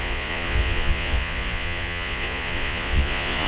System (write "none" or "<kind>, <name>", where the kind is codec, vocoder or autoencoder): vocoder, Vocos